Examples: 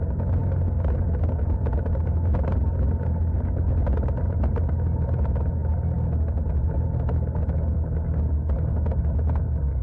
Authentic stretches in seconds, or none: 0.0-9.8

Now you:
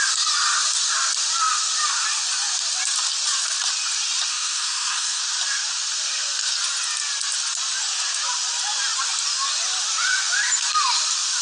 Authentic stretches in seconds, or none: 0.0-4.3; 5.2-11.4